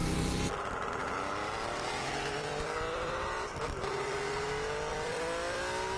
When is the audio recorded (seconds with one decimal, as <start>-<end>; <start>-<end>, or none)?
0.0-1.0; 4.0-4.9; 5.6-6.0